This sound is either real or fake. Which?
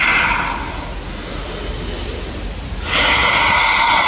real